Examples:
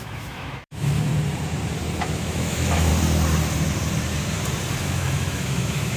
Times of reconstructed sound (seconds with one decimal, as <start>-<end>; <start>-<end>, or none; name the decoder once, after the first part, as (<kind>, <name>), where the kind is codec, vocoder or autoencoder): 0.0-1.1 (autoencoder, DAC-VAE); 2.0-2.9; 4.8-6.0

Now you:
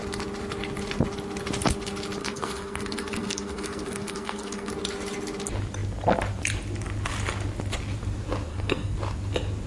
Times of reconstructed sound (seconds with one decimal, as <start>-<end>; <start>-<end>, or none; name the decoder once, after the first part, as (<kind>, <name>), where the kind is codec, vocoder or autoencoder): 2.2-4.7 (codec, SNAC); 8.5-9.0

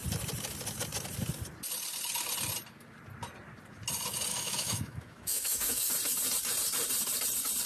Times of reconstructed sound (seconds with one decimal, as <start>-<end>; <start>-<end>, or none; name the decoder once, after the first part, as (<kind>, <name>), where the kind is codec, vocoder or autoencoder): 4.3-5.9 (autoencoder, DAC-VAE)